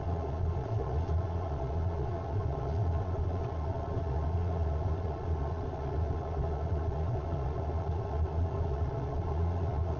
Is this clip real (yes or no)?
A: no